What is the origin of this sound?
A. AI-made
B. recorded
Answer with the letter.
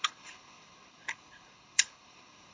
A